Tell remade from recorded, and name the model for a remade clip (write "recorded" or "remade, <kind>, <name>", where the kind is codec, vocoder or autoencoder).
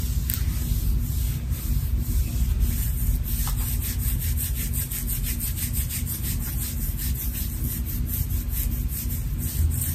recorded